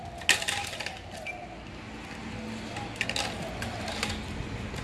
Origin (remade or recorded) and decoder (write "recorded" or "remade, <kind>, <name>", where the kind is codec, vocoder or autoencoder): recorded